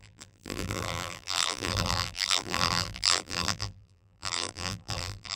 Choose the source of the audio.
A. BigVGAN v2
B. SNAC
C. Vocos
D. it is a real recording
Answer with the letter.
A